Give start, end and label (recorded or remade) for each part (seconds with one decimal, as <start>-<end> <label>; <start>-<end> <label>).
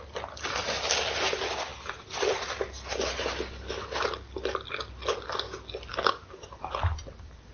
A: 0.0-5.9 recorded; 5.9-6.6 remade; 6.6-7.5 recorded